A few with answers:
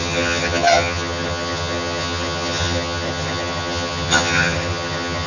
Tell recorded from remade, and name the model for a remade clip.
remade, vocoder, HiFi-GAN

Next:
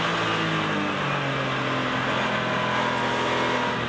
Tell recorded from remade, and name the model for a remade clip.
recorded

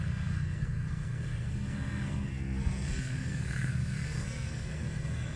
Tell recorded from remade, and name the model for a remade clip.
remade, codec, SNAC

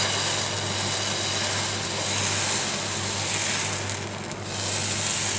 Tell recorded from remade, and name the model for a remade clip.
recorded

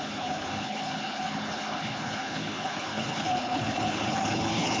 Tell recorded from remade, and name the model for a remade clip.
remade, codec, HILCodec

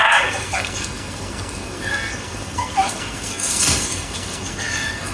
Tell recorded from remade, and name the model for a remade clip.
remade, codec, SNAC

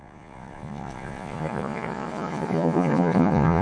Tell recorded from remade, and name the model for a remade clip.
remade, vocoder, Vocos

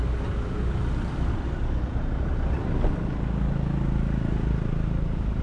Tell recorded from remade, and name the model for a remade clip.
recorded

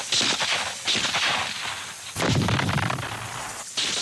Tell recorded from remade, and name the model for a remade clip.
recorded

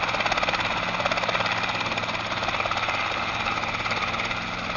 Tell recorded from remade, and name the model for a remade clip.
recorded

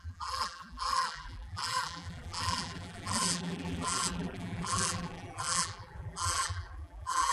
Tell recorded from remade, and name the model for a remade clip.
remade, vocoder, BigVGAN v2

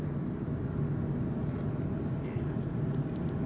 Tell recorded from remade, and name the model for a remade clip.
recorded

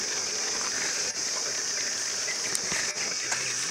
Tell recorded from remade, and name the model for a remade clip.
recorded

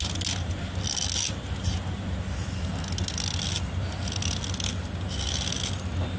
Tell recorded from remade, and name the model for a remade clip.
recorded